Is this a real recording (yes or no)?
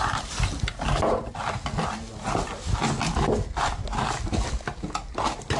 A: yes